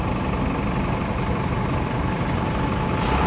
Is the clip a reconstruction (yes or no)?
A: no